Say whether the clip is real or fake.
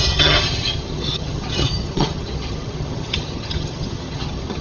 fake